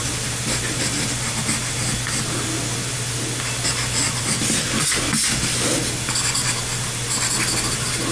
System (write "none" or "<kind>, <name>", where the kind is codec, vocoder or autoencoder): none